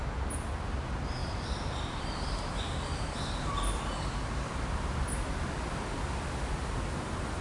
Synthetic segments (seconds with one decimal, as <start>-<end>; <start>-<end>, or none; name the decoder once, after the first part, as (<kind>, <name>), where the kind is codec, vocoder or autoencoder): 1.2-4.1 (vocoder, BigVGAN v2)